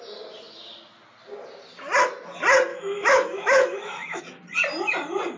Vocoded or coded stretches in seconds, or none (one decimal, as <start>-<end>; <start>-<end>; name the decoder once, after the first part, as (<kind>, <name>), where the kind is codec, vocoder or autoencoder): 2.7-4.2 (autoencoder, DAC-VAE)